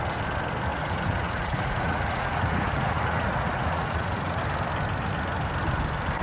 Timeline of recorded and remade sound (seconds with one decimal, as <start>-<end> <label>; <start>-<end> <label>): 0.0-0.7 recorded; 0.7-4.4 remade; 4.4-6.2 recorded